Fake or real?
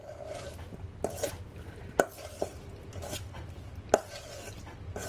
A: real